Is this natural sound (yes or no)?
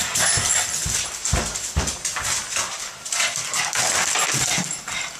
yes